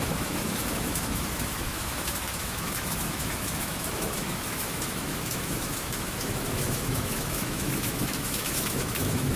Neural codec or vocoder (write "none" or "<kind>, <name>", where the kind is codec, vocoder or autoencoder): autoencoder, DAC-VAE